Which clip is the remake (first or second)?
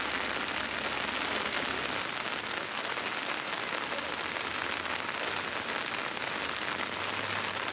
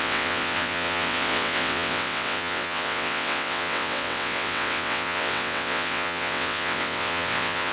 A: second